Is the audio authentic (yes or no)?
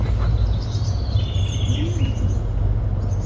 yes